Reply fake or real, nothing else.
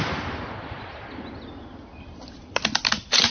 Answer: real